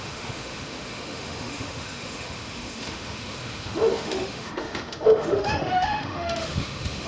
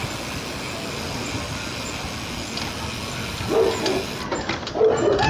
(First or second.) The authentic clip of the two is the second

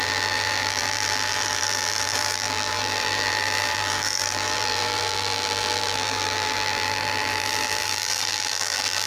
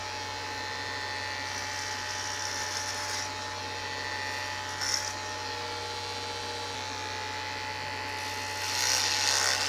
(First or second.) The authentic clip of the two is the second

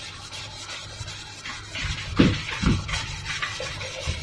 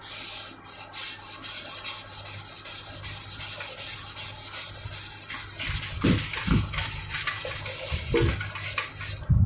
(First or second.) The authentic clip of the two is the second